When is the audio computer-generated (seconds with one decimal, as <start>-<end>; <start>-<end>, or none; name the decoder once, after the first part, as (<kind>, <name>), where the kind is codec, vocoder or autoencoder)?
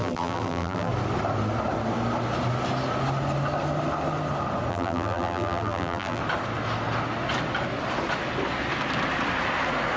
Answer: 0.0-0.9 (vocoder, BigVGAN v2); 4.7-6.2